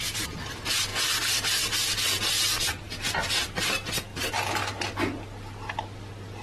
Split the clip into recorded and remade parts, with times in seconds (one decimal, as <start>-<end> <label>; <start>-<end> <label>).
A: 0.0-4.1 remade; 4.1-4.7 recorded; 4.7-6.4 remade